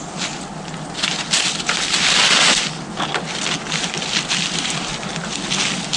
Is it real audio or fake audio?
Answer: real